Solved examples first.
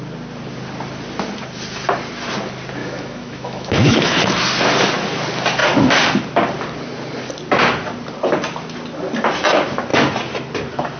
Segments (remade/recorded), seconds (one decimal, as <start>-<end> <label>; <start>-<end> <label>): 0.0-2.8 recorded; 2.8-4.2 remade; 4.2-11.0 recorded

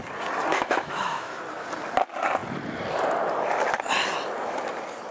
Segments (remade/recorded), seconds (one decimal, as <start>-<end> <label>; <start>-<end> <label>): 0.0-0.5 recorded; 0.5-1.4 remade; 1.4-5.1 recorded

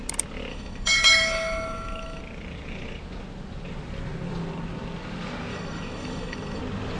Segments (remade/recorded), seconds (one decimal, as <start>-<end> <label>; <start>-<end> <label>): 0.0-0.5 recorded; 0.5-2.2 remade; 2.2-5.5 recorded; 5.5-6.6 remade; 6.6-7.0 recorded